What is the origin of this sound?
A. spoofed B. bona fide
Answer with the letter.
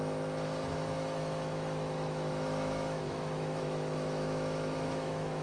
A